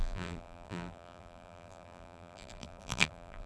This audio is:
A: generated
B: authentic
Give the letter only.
A